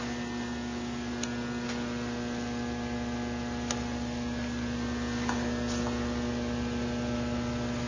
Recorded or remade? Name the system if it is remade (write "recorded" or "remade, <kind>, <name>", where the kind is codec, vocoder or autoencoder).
recorded